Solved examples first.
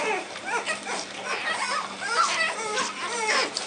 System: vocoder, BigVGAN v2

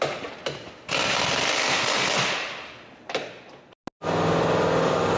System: none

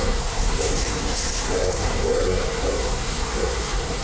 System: codec, SNAC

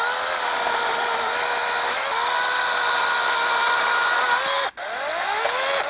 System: none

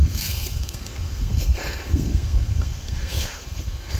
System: codec, SNAC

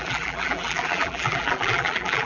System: vocoder, BigVGAN v2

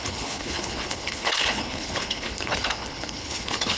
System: codec, HILCodec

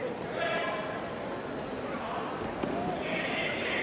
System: none